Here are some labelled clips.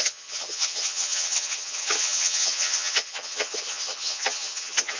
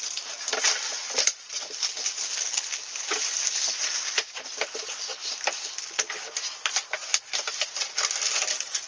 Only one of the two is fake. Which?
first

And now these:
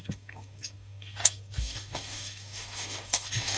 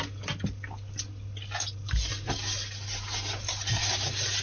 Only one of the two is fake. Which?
first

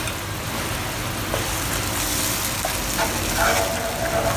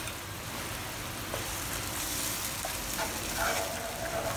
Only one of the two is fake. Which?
second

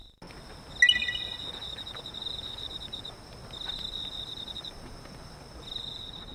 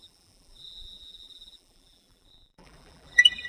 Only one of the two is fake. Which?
second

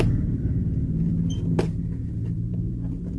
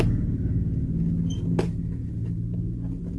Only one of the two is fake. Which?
first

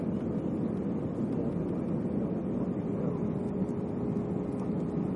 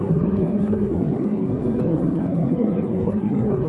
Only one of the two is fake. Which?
second